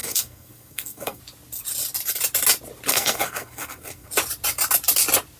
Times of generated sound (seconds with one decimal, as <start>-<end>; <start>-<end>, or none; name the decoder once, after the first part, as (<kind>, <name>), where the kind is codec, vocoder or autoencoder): 0.0-1.2 (codec, SNAC); 2.9-4.1